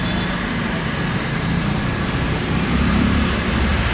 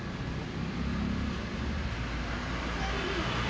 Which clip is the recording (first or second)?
second